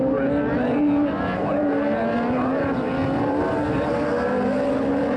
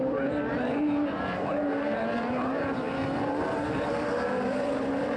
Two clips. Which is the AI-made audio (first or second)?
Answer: second